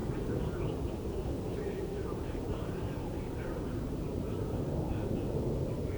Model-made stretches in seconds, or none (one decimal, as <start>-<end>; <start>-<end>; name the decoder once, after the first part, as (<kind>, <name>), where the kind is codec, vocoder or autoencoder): 0.0-0.9 (vocoder, BigVGAN v2); 1.5-4.9